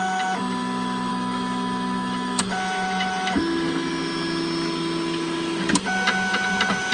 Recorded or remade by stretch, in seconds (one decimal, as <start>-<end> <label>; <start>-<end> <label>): 0.0-1.1 recorded; 1.1-3.4 remade; 3.4-6.9 recorded